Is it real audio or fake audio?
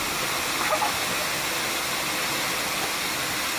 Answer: real